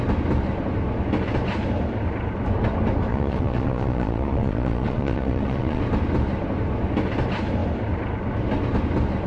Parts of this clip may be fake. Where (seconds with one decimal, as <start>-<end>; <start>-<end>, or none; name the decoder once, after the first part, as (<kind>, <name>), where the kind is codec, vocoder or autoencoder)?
3.1-5.8 (vocoder, Vocos)